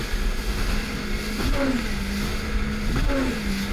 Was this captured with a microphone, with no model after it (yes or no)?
yes